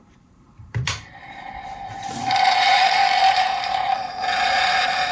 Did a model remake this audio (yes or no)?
yes